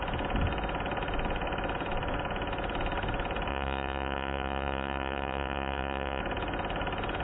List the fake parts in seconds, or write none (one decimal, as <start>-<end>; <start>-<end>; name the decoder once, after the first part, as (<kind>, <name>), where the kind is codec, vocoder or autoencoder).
3.5-6.2 (vocoder, Vocos)

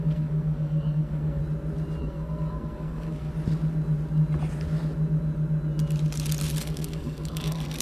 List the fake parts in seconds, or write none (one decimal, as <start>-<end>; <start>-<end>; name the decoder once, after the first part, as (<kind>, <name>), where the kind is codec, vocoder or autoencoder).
0.0-1.4 (codec, SNAC); 2.0-3.3; 6.6-7.8

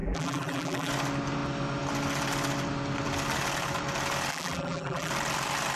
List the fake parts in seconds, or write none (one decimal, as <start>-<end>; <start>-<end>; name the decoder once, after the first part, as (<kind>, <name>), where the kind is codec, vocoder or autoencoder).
0.0-0.9 (vocoder, BigVGAN v2); 4.3-5.1

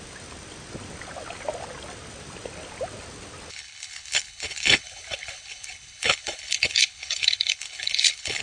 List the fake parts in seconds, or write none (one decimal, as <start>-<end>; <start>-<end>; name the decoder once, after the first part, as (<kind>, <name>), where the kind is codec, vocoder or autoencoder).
3.5-8.4 (codec, HILCodec)